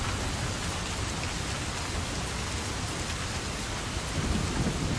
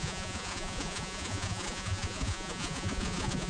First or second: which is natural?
first